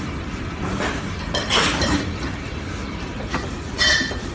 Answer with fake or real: fake